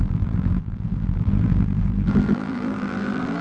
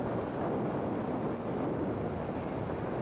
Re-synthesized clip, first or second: first